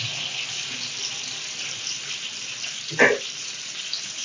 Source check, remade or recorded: recorded